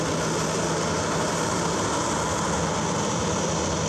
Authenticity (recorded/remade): recorded